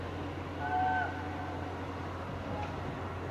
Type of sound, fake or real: real